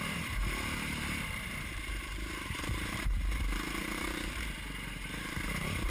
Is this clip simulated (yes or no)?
yes